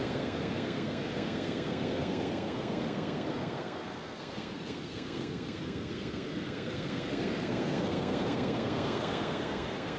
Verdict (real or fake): fake